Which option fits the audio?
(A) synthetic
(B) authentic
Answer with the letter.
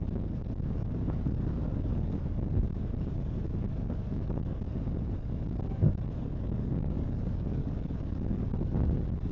A